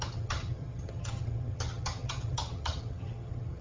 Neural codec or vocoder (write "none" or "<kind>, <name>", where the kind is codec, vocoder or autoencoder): vocoder, HiFi-GAN